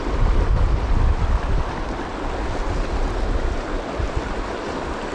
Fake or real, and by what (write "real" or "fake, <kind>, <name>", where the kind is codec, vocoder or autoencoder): real